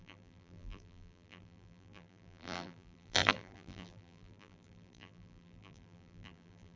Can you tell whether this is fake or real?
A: fake